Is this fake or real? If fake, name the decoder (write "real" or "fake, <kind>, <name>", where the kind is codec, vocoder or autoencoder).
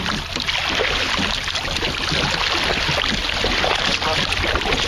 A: real